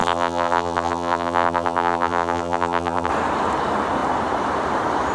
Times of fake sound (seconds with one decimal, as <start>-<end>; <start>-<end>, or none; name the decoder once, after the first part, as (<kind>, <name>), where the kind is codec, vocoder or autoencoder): 0.0-3.1 (vocoder, BigVGAN v2)